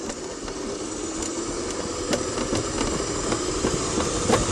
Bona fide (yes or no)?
yes